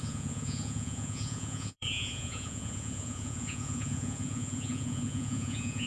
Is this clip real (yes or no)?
no